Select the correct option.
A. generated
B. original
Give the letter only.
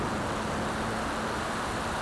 B